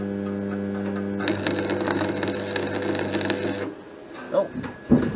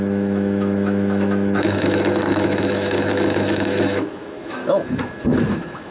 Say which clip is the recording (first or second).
first